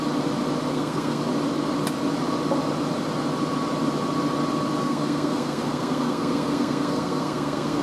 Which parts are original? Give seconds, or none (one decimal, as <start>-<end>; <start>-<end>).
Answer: 0.0-0.7; 1.2-4.8